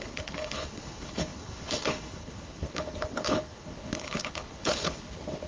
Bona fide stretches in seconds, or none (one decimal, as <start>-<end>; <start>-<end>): none